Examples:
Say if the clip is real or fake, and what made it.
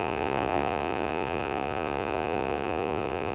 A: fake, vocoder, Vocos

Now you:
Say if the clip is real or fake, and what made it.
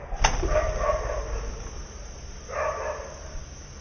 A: real